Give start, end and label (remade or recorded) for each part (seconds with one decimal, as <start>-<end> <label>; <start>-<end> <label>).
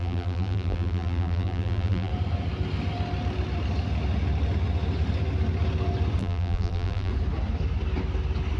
0.0-2.1 remade; 2.1-6.2 recorded; 6.2-7.1 remade; 7.1-8.6 recorded